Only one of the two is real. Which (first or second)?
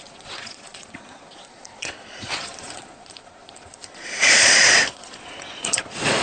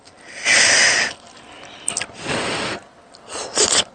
second